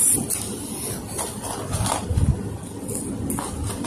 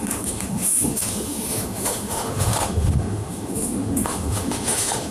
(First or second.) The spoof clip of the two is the second